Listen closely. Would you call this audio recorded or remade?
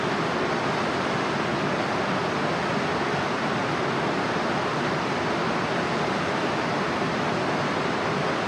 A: recorded